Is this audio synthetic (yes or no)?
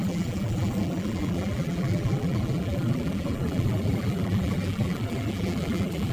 yes